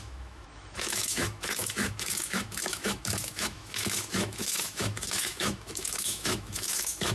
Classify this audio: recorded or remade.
remade